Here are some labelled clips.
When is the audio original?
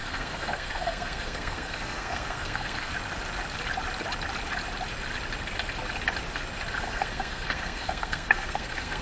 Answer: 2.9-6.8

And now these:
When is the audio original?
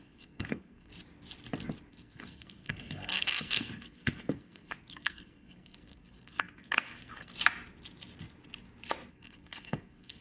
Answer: 0.9-1.9; 7.3-9.1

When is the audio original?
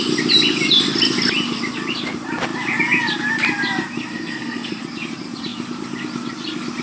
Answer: 0.0-4.1; 4.8-6.8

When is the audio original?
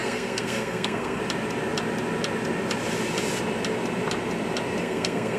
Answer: 1.2-4.8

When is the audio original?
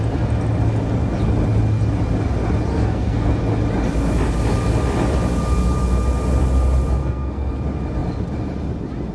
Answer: 0.0-2.7; 3.4-7.0; 7.5-9.1